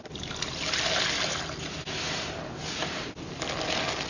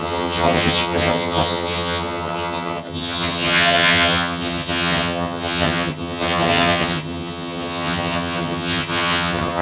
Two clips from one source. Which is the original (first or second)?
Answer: first